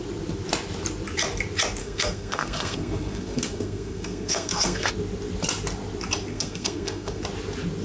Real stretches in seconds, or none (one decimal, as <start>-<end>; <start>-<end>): 0.0-1.8; 4.9-6.3; 7.2-7.8